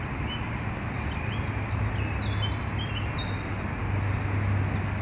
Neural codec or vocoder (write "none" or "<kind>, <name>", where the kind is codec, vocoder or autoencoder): none